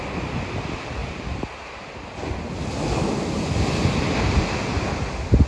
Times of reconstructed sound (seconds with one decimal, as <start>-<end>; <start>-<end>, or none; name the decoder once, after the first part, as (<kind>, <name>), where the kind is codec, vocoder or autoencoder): none